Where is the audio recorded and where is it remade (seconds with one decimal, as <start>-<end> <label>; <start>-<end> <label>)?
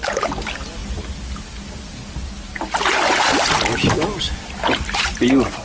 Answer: 0.0-5.6 recorded